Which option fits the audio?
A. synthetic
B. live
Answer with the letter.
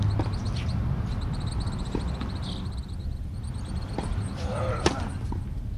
B